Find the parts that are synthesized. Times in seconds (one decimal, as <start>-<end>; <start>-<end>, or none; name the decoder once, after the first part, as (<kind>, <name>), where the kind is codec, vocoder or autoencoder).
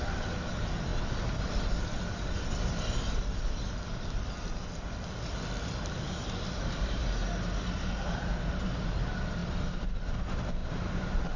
0.0-0.9 (vocoder, BigVGAN v2); 6.0-7.0; 7.8-9.4; 10.1-11.4